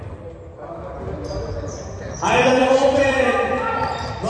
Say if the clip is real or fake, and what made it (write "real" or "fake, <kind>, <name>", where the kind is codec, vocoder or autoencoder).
fake, vocoder, BigVGAN v2